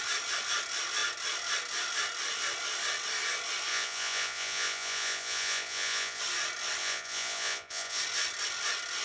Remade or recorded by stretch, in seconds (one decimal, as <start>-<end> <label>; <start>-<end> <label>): 0.0-3.7 recorded; 3.7-6.2 remade; 6.2-6.8 recorded; 6.8-8.0 remade; 8.0-9.0 recorded